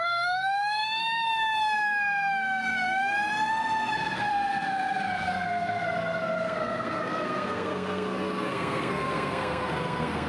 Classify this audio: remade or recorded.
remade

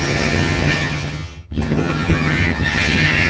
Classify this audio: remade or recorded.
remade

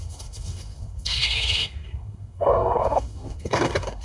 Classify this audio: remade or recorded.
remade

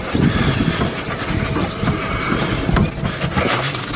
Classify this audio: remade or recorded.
recorded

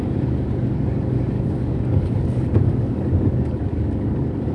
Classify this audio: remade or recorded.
remade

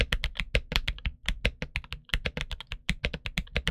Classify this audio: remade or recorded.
recorded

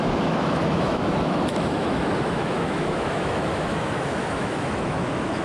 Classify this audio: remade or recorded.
remade